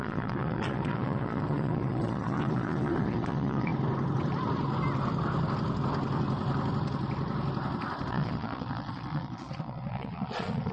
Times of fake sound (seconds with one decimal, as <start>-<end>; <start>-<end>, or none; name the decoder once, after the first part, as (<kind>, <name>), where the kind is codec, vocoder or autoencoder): 0.0-3.7 (vocoder, Vocos); 8.1-10.7